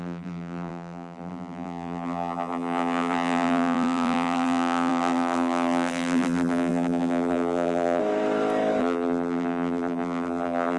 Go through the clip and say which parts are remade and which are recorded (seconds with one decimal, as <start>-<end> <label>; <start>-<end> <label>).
0.0-8.0 remade; 8.0-8.8 recorded; 8.8-10.8 remade